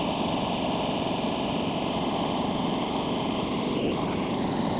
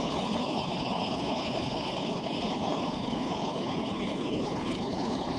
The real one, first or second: first